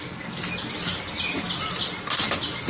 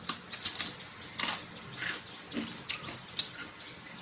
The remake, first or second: second